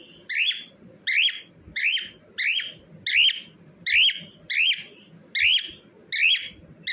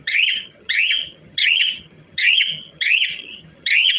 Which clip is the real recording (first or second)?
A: first